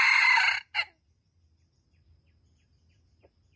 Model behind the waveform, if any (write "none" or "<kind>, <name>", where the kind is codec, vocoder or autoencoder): none